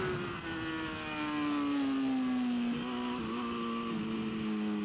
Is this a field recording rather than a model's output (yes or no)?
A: yes